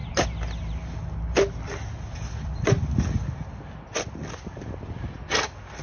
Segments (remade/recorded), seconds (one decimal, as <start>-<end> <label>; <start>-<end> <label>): 0.0-5.8 recorded